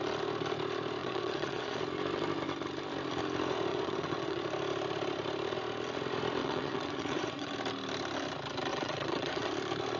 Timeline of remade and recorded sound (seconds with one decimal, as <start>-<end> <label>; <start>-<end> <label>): 0.0-1.0 recorded; 1.0-1.8 remade; 1.8-3.7 recorded; 3.7-4.4 remade; 4.4-6.4 recorded; 6.4-7.5 remade; 7.5-8.7 recorded; 8.7-9.5 remade; 9.5-10.0 recorded